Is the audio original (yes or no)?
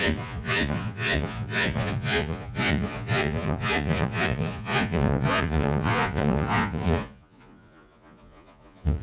no